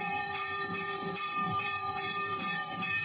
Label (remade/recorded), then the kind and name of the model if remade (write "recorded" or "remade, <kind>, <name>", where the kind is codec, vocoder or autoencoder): remade, vocoder, BigVGAN v2